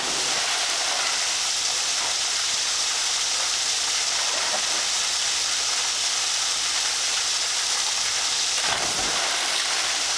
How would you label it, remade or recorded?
recorded